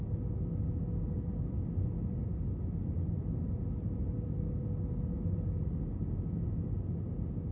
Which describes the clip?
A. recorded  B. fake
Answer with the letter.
A